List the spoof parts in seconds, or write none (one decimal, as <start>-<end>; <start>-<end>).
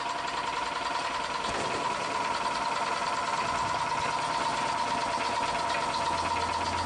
none